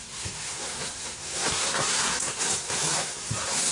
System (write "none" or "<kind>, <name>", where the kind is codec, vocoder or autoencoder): codec, SNAC